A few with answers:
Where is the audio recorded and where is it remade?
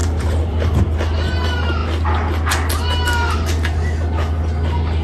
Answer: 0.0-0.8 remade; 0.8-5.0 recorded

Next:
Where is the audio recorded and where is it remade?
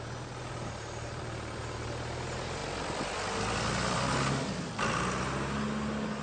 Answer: 0.0-6.2 recorded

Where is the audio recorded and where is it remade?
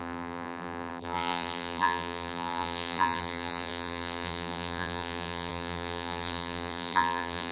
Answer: 0.0-7.5 remade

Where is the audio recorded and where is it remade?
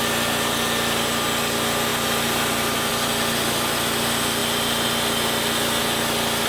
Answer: 0.0-1.9 recorded; 1.9-2.9 remade; 2.9-6.5 recorded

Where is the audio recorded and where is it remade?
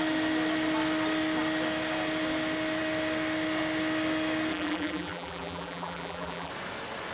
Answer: 0.0-4.5 recorded; 4.5-6.5 remade; 6.5-7.1 recorded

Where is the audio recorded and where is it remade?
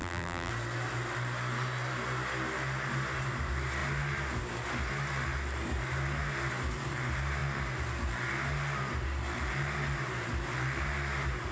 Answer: 0.0-0.5 remade; 0.5-11.5 recorded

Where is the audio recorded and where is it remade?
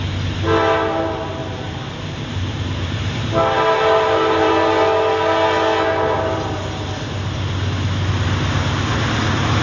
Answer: 0.0-1.4 recorded; 1.4-4.5 remade; 4.5-9.6 recorded